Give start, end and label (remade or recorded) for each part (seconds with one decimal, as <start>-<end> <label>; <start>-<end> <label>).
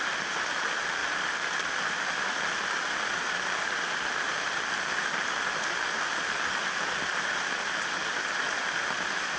0.0-9.4 recorded